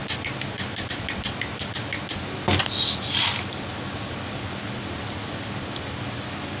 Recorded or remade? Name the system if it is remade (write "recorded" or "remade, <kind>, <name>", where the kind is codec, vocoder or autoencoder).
recorded